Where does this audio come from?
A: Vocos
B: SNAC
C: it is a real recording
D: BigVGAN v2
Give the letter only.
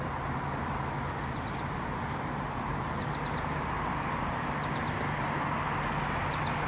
C